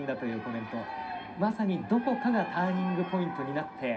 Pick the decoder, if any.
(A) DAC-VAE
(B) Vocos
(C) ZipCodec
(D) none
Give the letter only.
D